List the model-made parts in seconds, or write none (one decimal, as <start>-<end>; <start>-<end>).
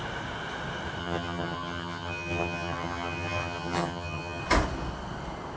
1.0-4.4